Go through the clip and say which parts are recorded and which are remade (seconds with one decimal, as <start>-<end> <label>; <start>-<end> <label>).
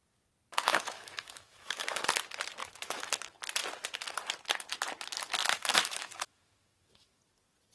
0.0-0.7 recorded; 0.7-2.0 remade; 2.0-2.6 recorded; 2.6-3.1 remade; 3.1-5.4 recorded; 5.4-7.2 remade; 7.2-7.7 recorded